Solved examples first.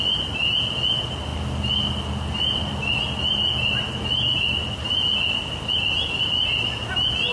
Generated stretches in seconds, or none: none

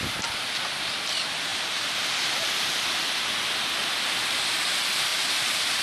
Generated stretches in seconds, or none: 3.8-4.6; 5.1-5.8

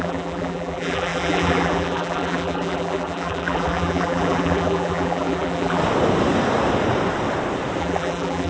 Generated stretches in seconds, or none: 0.0-5.8; 7.8-8.5

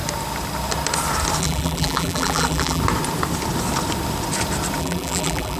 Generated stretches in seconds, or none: 1.4-2.8; 4.8-5.6

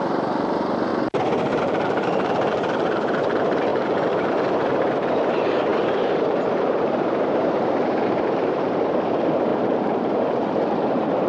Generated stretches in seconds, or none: 0.0-0.9; 1.4-11.3